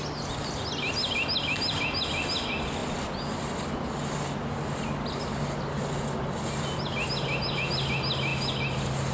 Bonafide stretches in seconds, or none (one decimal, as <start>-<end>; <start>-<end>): 0.0-9.1